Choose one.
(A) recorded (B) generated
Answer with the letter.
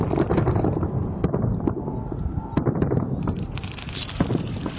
A